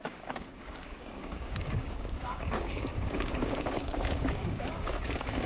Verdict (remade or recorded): remade